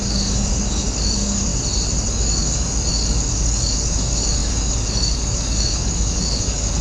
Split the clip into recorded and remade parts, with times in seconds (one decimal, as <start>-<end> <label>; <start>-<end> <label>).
0.0-1.5 remade; 1.5-2.1 recorded; 2.1-6.8 remade